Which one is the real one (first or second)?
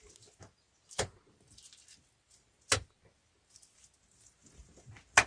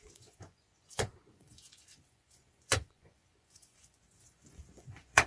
first